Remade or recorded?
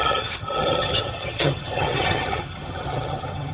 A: remade